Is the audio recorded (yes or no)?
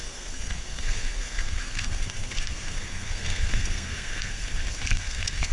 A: no